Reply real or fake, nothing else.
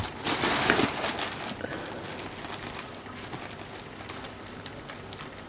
real